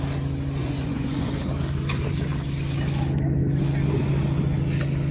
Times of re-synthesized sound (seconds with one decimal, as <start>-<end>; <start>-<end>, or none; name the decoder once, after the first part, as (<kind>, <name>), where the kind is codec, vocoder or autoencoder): 0.6-1.3 (vocoder, Vocos)